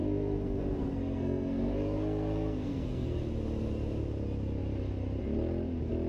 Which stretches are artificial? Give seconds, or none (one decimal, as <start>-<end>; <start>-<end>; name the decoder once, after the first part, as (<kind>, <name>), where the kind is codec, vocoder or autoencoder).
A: 0.0-3.2 (codec, SNAC)